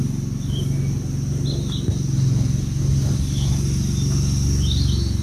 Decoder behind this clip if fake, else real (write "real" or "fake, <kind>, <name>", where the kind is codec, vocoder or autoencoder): real